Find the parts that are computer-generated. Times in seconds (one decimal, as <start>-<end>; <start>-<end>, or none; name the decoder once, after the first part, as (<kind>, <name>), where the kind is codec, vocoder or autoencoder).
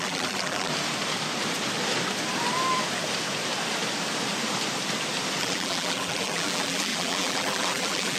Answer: 0.0-0.7 (vocoder, BigVGAN v2); 5.4-8.2